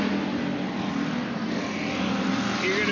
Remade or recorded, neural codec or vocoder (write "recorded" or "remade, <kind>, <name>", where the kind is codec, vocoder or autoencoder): recorded